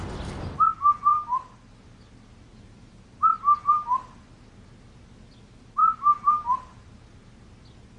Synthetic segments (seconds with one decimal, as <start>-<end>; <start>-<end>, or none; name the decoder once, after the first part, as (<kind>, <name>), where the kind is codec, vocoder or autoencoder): 2.5-3.4 (vocoder, BigVGAN v2); 5.8-7.4